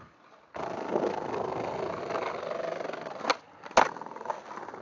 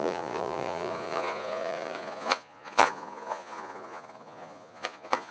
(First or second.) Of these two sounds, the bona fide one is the first